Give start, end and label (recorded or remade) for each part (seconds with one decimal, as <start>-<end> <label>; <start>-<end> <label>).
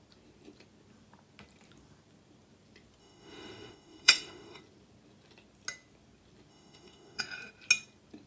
0.0-3.0 recorded; 3.0-4.6 remade; 4.6-6.5 recorded; 6.5-7.2 remade; 7.2-8.3 recorded